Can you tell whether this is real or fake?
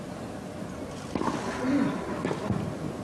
real